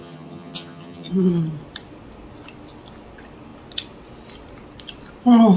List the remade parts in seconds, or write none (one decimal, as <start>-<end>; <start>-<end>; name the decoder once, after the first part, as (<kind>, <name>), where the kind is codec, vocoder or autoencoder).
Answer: 0.0-1.1 (vocoder, HiFi-GAN)